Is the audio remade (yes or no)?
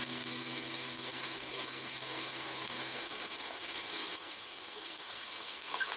yes